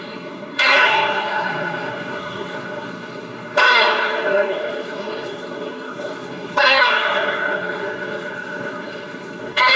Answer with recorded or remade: remade